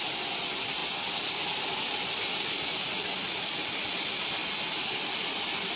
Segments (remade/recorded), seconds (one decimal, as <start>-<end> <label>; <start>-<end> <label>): 0.0-5.8 remade